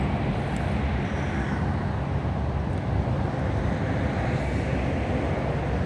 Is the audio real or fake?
real